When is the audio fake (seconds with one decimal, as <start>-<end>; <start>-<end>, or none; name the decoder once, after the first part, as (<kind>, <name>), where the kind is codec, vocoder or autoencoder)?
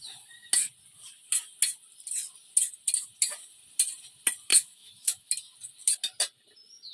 4.5-5.3 (autoencoder, DAC-VAE)